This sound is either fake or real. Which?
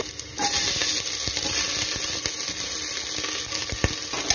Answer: real